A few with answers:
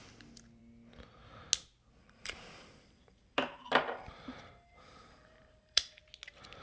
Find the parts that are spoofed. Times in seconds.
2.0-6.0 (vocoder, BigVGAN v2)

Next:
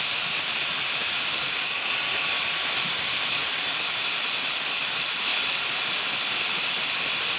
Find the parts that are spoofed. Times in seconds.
0.0-3.4 (vocoder, BigVGAN v2); 4.4-5.3; 6.5-7.4